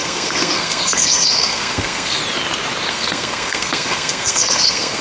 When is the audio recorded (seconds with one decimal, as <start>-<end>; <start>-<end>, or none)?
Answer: 2.2-2.9